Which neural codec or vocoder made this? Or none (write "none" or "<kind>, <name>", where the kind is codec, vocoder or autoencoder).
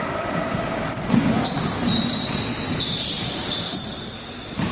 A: vocoder, BigVGAN v2